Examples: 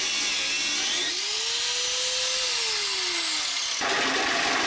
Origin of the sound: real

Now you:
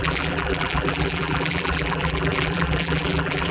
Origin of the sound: fake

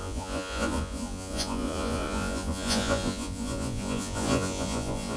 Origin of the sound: fake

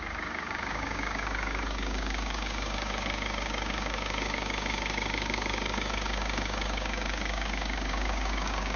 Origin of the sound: fake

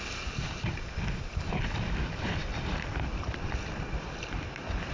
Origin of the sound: real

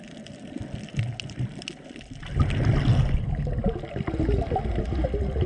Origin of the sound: real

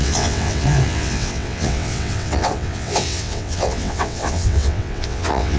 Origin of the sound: fake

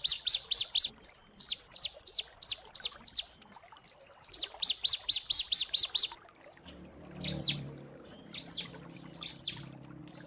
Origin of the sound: real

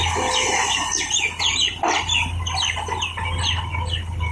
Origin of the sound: real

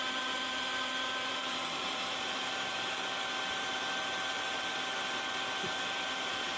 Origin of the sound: fake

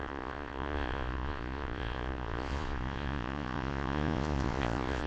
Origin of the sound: fake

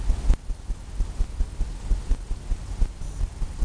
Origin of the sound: real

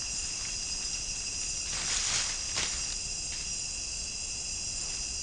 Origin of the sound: real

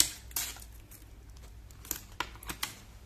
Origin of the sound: real